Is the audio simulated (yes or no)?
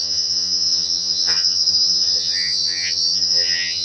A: yes